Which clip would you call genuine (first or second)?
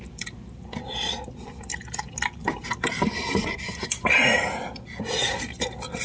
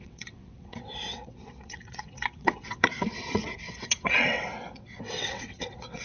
first